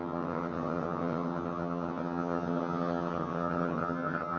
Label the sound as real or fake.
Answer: fake